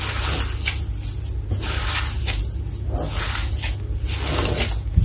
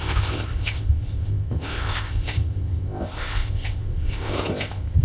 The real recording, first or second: first